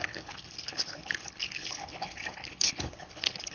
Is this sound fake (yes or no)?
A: yes